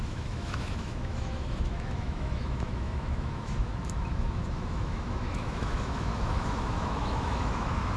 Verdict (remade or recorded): remade